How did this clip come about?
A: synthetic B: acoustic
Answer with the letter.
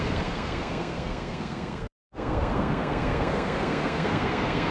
A